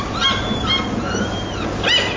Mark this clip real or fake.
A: real